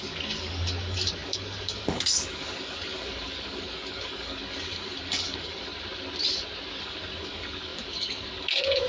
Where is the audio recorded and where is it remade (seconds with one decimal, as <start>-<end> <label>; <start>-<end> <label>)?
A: 0.0-5.7 remade; 5.7-6.7 recorded; 6.7-8.9 remade